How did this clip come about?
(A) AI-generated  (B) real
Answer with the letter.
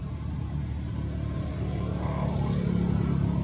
B